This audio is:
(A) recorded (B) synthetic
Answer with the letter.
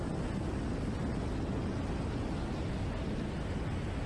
A